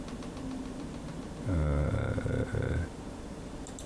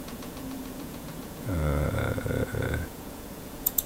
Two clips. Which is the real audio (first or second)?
first